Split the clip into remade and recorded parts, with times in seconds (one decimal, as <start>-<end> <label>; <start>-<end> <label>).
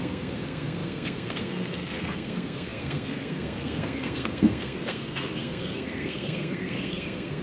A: 0.0-7.4 remade